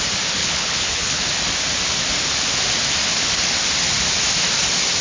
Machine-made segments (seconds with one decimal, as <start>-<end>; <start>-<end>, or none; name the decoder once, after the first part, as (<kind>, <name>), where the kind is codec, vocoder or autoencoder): 0.4-1.2 (codec, HILCodec)